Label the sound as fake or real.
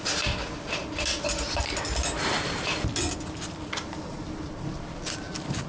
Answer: real